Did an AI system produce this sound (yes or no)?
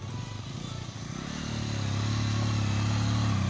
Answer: no